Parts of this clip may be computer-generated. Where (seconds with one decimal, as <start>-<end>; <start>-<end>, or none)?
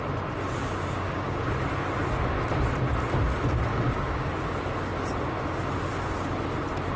0.6-1.5; 3.7-4.3